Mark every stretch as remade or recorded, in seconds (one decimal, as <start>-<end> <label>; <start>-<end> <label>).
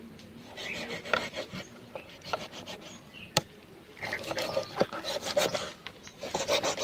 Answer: 0.0-0.6 recorded; 0.6-4.7 remade; 4.7-6.8 recorded